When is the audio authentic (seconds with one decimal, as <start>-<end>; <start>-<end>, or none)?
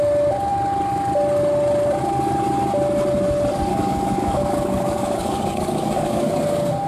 0.0-3.7; 6.3-6.9